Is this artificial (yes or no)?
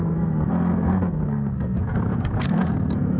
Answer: yes